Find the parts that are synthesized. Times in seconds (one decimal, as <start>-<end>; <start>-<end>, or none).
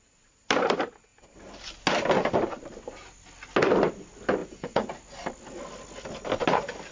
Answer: 4.4-4.9